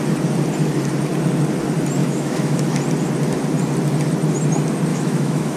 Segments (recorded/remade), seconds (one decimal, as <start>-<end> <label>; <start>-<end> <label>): 0.0-2.0 recorded; 2.0-2.8 remade; 2.8-4.9 recorded; 4.9-5.6 remade